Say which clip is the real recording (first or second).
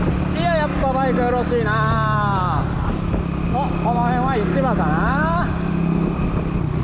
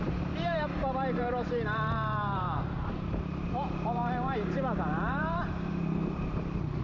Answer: first